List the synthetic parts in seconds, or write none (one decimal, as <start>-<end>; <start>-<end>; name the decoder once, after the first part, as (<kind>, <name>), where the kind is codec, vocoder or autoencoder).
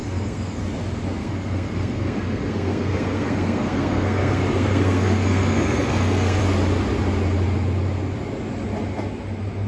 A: 0.0-0.6 (codec, SNAC); 1.2-6.4